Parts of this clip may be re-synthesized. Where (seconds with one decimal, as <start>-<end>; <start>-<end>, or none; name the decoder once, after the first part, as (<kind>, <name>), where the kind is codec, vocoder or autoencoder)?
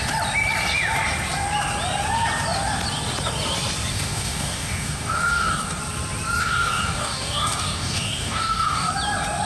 3.9-5.8 (codec, DAC); 6.4-8.9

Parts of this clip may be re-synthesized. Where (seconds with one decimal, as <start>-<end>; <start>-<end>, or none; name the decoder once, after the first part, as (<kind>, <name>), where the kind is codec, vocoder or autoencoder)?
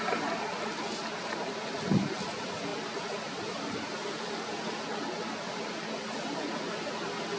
none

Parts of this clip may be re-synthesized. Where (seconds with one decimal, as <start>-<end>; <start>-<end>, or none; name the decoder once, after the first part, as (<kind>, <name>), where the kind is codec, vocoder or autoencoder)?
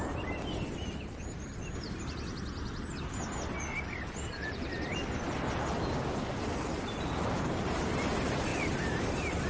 2.4-2.9 (vocoder, BigVGAN v2); 8.5-9.0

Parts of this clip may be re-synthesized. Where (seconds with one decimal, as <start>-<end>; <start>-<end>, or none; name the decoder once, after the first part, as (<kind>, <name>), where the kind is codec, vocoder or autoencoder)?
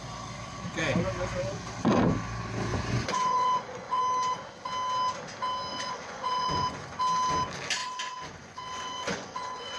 2.7-4.0 (vocoder, Vocos); 5.7-7.0; 7.8-9.8